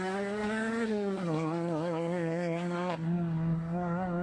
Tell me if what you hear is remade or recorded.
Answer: remade